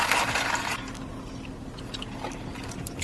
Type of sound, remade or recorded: recorded